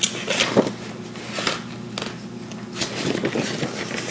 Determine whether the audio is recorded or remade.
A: recorded